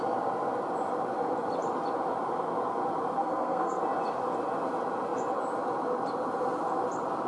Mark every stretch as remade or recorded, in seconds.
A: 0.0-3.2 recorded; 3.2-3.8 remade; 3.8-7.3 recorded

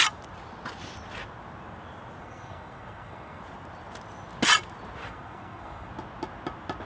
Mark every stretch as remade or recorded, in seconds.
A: 0.0-2.2 recorded; 2.2-3.4 remade; 3.4-5.0 recorded; 5.0-5.9 remade; 5.9-6.9 recorded

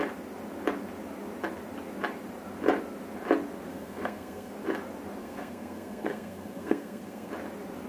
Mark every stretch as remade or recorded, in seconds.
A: 0.0-3.7 recorded; 3.7-4.5 remade; 4.5-5.2 recorded; 5.2-7.3 remade; 7.3-7.9 recorded

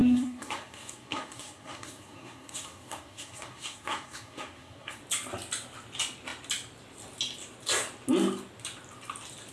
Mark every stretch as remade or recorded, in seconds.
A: 0.0-5.0 remade; 5.0-9.5 recorded